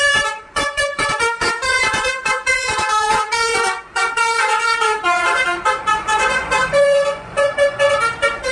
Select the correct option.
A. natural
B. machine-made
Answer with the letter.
B